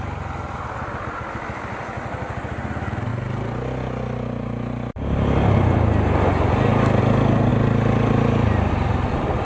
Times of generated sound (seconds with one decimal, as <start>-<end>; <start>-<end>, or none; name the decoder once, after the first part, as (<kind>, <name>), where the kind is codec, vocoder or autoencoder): none